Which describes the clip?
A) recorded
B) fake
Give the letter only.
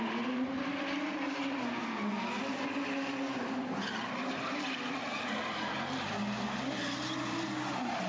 A